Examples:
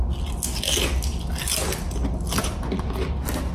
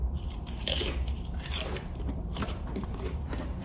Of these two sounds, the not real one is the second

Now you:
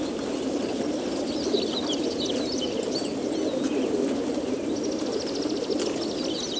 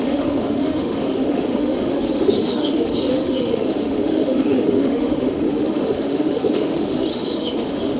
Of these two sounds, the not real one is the second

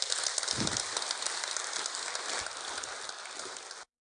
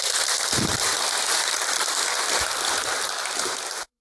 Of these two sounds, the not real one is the second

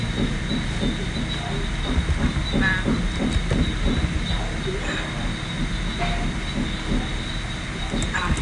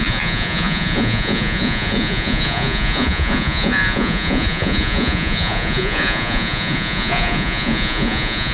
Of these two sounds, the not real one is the second